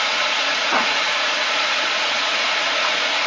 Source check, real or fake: fake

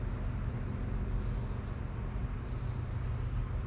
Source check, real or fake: real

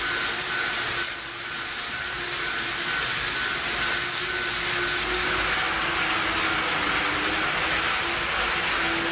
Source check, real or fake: real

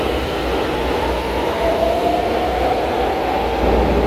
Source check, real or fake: real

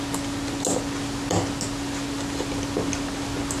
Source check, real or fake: real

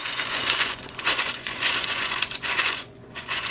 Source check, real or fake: fake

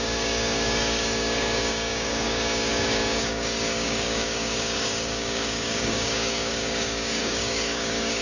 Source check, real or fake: fake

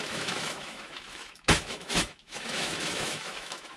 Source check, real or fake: fake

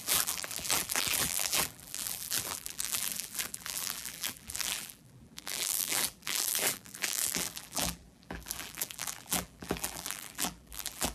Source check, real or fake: fake